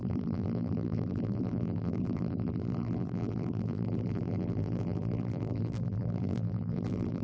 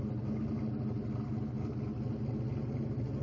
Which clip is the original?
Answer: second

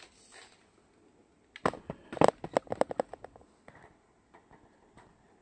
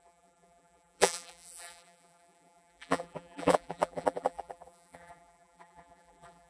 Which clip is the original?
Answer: first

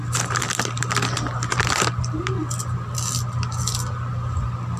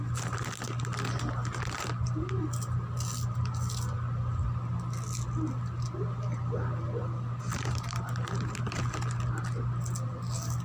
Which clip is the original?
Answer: second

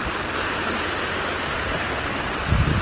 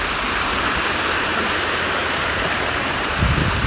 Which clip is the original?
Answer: first